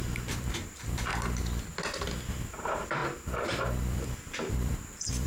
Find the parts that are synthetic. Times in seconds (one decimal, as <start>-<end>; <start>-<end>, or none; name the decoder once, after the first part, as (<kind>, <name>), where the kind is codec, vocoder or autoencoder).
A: 0.0-1.1 (vocoder, BigVGAN v2); 2.3-3.0; 4.5-5.3